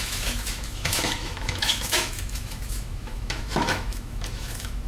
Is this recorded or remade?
remade